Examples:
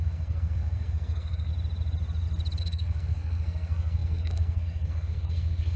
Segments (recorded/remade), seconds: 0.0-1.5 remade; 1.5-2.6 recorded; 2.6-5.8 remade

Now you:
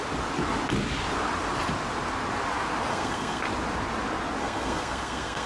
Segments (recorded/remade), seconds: 0.0-2.9 recorded; 2.9-3.4 remade; 3.4-4.4 recorded; 4.4-5.5 remade

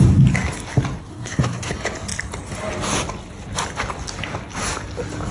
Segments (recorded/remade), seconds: 0.0-1.1 recorded; 1.1-1.7 remade; 1.7-5.3 recorded